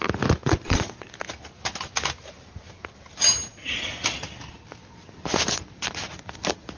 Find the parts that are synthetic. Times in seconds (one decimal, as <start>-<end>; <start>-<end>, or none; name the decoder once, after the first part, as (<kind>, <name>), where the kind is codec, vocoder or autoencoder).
0.4-1.1 (vocoder, Vocos)

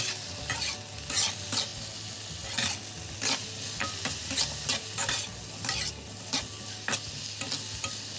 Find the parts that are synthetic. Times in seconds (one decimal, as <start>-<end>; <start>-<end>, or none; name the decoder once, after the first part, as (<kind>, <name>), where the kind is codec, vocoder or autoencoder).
none

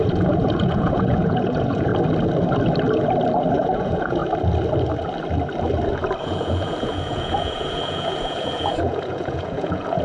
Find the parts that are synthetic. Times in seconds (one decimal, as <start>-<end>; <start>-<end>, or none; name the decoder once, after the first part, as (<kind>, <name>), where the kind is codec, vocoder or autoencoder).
0.0-1.9 (vocoder, Vocos); 3.5-4.2; 6.2-10.0

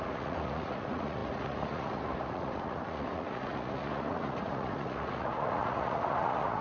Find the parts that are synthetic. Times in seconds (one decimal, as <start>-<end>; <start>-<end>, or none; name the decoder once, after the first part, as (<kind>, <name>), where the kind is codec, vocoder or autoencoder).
0.0-6.6 (vocoder, Vocos)

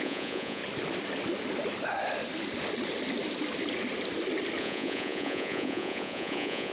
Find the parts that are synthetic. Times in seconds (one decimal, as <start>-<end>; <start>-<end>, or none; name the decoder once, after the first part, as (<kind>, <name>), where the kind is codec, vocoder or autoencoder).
0.0-0.6 (vocoder, Vocos); 4.6-6.7

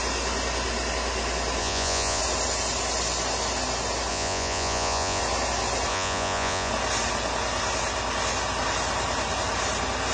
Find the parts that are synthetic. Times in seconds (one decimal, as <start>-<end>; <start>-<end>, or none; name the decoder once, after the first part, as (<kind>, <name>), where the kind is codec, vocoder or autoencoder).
1.6-2.2 (vocoder, Vocos); 4.1-5.2; 5.9-6.7

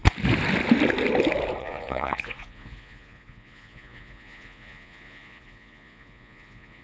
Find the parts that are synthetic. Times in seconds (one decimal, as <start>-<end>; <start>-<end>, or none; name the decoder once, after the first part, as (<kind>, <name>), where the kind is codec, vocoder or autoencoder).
1.6-6.8 (vocoder, Vocos)

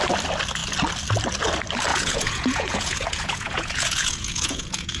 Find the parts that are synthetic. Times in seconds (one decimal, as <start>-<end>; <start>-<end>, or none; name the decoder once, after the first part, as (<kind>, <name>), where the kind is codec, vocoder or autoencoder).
1.9-5.0 (vocoder, Vocos)